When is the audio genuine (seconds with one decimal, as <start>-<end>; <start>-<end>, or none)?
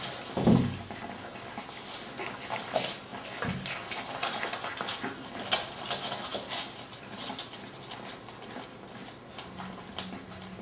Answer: 0.0-10.6